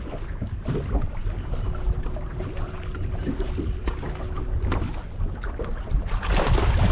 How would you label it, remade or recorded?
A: recorded